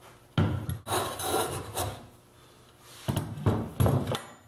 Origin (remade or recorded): recorded